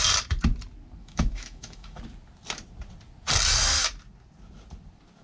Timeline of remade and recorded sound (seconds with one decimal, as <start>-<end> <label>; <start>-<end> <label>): 0.0-1.0 recorded; 1.0-2.0 remade; 2.0-5.2 recorded